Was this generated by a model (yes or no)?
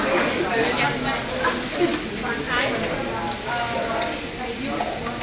no